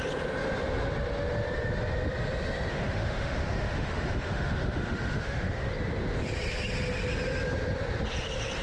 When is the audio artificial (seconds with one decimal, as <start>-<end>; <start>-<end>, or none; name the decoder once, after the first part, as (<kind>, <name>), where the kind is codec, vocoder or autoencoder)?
2.7-5.7 (autoencoder, DAC-VAE)